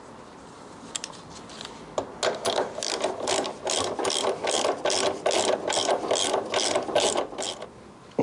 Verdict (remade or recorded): recorded